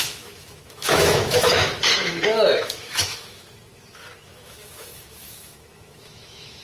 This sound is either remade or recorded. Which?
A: remade